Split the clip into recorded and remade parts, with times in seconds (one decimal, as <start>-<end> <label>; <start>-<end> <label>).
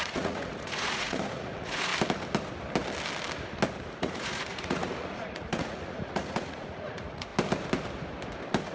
0.0-1.9 remade; 1.9-4.0 recorded; 4.0-7.3 remade; 7.3-8.7 recorded